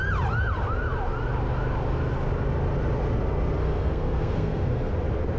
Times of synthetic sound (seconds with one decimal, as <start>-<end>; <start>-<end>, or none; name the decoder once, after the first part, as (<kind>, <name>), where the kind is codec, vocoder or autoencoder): 3.6-4.9 (codec, SNAC)